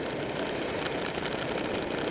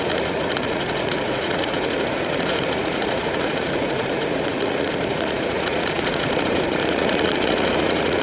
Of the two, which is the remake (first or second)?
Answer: second